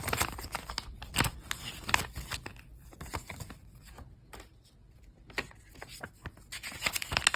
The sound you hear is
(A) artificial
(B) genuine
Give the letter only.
B